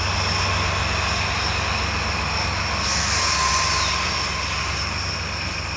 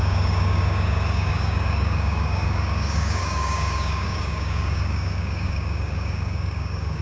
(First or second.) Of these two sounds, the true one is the first